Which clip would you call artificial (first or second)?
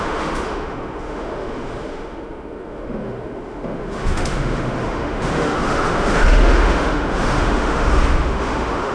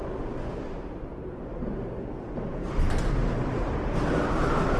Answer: first